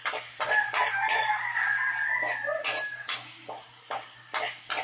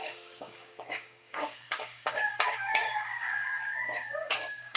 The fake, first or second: second